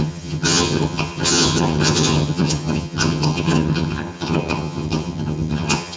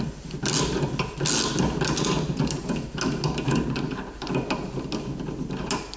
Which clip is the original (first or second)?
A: second